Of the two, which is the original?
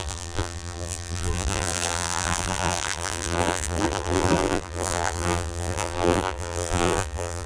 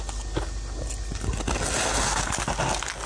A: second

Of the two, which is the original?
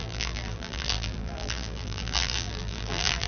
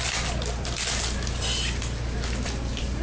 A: second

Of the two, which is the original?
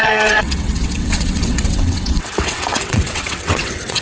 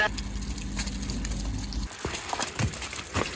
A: second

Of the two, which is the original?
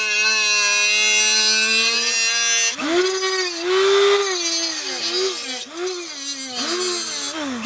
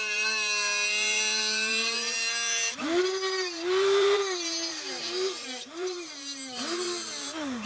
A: first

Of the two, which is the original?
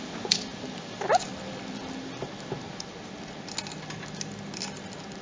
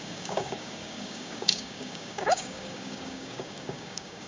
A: first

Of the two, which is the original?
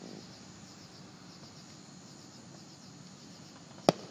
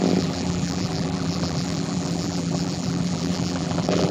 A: first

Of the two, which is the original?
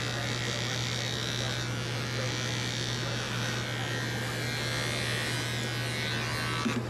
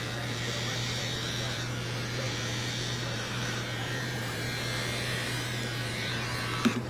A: first